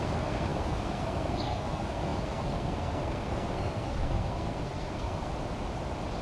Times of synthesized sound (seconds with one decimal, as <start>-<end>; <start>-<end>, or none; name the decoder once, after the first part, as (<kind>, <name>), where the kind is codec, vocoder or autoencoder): 0.0-5.3 (codec, SNAC)